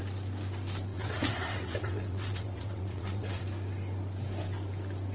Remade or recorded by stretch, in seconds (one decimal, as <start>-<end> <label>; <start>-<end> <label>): 0.0-0.9 recorded; 0.9-3.4 remade; 3.4-5.1 recorded